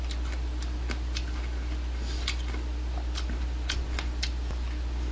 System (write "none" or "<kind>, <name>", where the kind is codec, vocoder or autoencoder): none